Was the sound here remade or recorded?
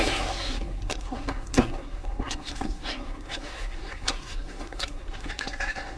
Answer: remade